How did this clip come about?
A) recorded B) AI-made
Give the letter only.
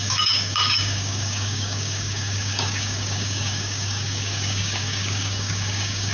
B